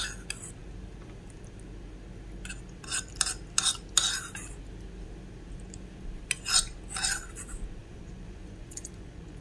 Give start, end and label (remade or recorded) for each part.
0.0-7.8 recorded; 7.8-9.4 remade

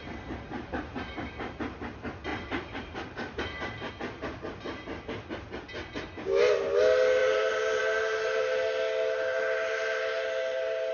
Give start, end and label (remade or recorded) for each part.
0.0-0.5 recorded; 0.5-1.5 remade; 1.5-2.3 recorded; 2.3-3.9 remade; 3.9-7.2 recorded; 7.2-8.4 remade; 8.4-10.9 recorded

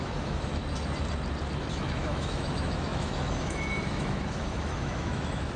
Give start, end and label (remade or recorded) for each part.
0.0-0.6 remade; 0.6-1.6 recorded; 1.6-5.6 remade

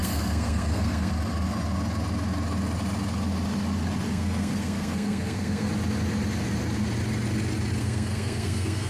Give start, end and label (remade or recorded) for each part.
0.0-1.1 remade; 1.1-4.1 recorded; 4.1-5.7 remade; 5.7-7.8 recorded; 7.8-8.9 remade